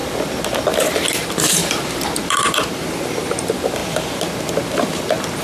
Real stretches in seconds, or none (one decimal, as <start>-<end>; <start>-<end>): 0.0-1.1

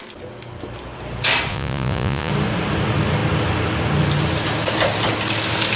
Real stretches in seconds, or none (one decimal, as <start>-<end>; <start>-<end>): 0.0-1.5; 2.3-5.8

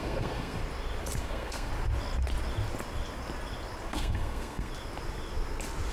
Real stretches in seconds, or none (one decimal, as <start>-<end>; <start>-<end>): 0.6-1.2; 1.7-3.9; 4.7-5.9

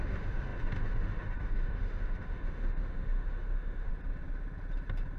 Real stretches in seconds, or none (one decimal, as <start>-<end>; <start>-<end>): 3.9-5.2

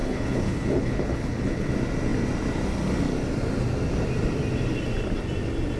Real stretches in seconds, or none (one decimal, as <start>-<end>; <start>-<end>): 1.7-5.8

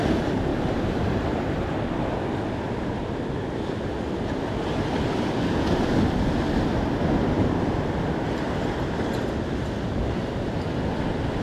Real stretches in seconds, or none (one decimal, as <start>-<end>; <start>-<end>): 0.0-0.5; 1.6-11.4

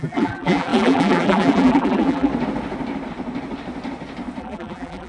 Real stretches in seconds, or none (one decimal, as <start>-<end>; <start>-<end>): 2.3-4.4

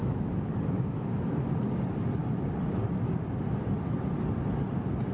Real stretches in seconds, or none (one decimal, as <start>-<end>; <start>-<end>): 1.5-5.1